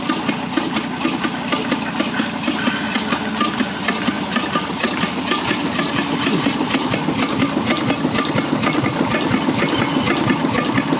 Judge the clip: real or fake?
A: real